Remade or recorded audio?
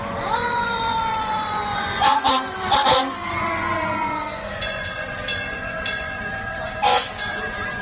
remade